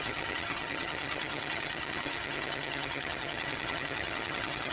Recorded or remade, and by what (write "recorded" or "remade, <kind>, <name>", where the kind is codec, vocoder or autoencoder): remade, vocoder, HiFi-GAN